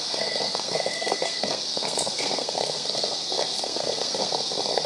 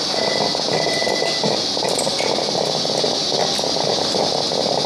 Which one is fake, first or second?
first